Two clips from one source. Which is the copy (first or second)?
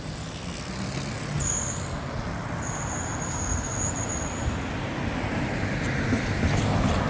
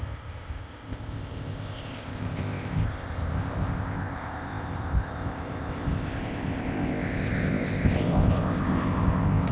second